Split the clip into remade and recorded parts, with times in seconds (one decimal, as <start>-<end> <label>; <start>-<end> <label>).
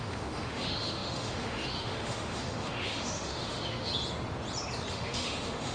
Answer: 0.0-3.9 remade; 3.9-4.9 recorded; 4.9-5.7 remade